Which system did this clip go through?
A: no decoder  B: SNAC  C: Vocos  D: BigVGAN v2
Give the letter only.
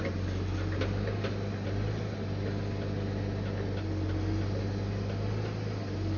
A